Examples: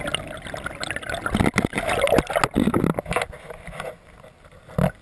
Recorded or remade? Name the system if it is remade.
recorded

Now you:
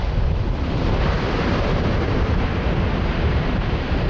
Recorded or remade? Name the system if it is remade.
recorded